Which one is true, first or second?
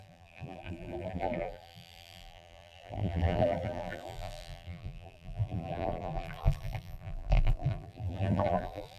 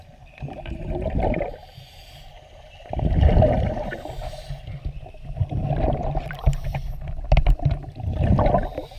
second